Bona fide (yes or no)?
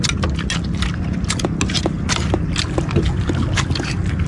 yes